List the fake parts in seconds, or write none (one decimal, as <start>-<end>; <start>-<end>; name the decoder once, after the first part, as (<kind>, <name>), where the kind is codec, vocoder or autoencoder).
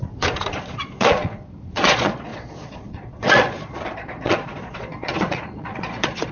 0.0-6.3 (vocoder, Vocos)